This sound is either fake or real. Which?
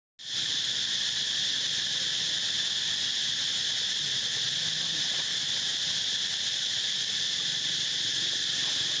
real